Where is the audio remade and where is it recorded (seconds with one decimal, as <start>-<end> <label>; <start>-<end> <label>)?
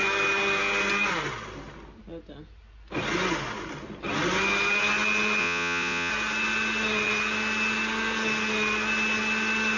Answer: 0.0-5.4 recorded; 5.4-6.1 remade; 6.1-9.8 recorded